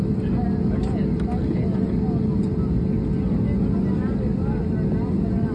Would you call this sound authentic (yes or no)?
yes